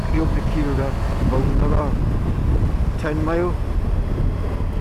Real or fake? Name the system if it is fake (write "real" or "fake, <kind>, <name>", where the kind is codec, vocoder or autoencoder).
real